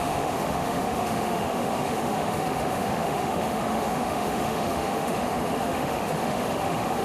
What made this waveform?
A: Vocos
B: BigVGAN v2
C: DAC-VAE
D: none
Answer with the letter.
C